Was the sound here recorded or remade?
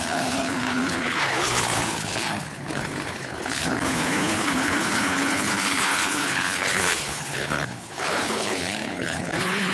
remade